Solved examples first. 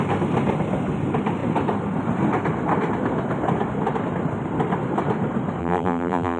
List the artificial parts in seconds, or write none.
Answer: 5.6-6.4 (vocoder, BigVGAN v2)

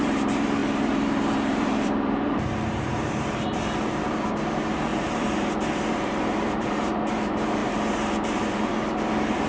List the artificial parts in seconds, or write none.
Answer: 0.0-9.5 (vocoder, BigVGAN v2)

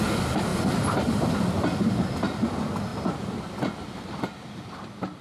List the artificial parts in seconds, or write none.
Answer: 0.5-1.3 (vocoder, BigVGAN v2)